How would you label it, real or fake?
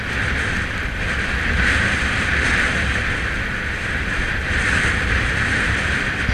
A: real